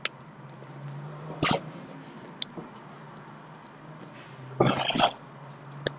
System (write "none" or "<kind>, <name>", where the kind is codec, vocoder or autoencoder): none